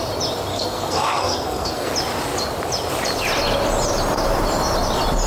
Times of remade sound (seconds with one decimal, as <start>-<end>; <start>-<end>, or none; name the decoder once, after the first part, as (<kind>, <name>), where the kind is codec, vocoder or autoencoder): 0.5-1.9 (codec, SNAC)